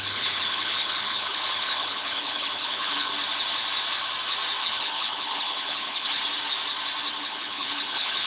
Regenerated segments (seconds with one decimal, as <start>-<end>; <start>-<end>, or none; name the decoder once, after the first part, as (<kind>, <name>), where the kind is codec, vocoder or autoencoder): 0.0-3.1 (codec, HILCodec); 4.6-6.1; 7.2-8.3